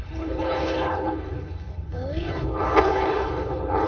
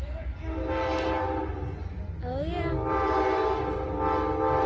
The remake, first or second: first